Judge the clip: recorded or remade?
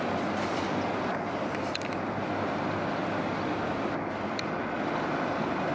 recorded